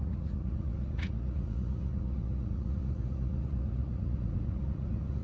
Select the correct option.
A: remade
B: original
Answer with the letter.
A